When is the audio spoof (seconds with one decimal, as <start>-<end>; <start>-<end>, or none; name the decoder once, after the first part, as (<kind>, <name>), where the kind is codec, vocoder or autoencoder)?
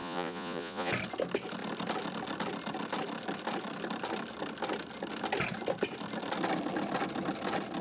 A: 0.0-0.9 (vocoder, Vocos)